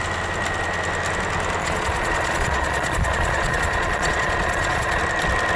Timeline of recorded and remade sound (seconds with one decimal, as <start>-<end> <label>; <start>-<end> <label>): 0.0-1.6 recorded; 1.6-5.0 remade; 5.0-5.6 recorded